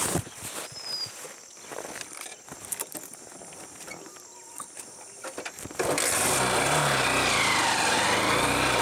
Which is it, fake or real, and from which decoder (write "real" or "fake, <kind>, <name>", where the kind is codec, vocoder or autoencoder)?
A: real